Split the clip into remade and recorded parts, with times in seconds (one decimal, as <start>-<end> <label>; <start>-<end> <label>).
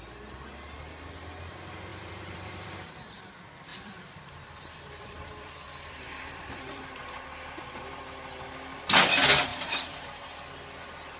0.0-1.9 recorded; 1.9-3.3 remade; 3.3-3.7 recorded; 3.7-7.6 remade; 7.6-9.5 recorded; 9.5-10.5 remade; 10.5-11.2 recorded